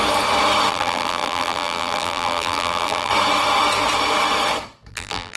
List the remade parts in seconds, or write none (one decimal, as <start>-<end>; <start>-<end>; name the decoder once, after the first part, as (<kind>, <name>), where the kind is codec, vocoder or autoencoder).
0.7-3.1 (vocoder, BigVGAN v2); 4.9-5.4